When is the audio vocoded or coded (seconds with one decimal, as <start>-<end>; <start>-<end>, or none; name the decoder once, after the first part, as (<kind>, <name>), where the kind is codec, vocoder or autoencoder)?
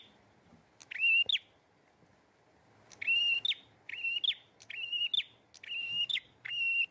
5.8-6.5 (codec, DAC)